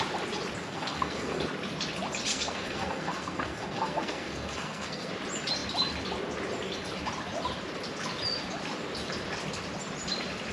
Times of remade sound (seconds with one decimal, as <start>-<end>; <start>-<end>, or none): 0.6-1.4; 2.3-5.1